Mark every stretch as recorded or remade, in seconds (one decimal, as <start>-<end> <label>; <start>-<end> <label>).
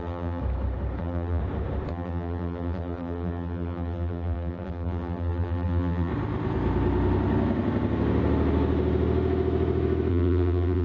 0.0-0.4 remade; 0.4-1.0 recorded; 1.0-1.4 remade; 1.4-1.9 recorded; 1.9-6.1 remade; 6.1-10.1 recorded; 10.1-10.8 remade